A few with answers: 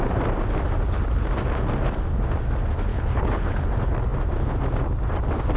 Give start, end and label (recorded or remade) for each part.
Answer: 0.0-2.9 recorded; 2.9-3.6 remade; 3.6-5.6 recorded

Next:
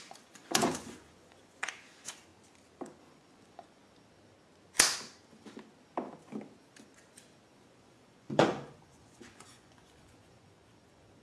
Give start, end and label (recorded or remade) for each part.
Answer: 0.0-2.3 remade; 2.3-3.0 recorded; 3.0-3.8 remade; 3.8-7.5 recorded; 7.5-11.2 remade

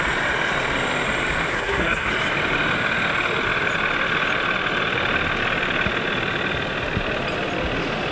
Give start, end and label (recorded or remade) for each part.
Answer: 0.0-1.5 recorded; 1.5-2.1 remade; 2.1-8.1 recorded

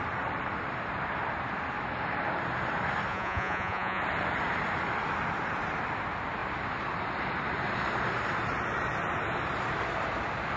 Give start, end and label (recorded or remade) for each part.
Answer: 0.0-3.1 recorded; 3.1-4.0 remade; 4.0-10.6 recorded

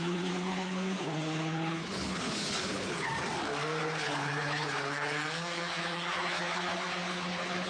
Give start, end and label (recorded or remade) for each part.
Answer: 0.0-3.1 remade; 3.1-3.8 recorded; 3.8-7.7 remade